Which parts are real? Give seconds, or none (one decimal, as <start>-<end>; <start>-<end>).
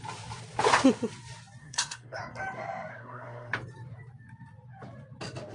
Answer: 0.0-1.6; 2.2-2.9; 3.5-5.5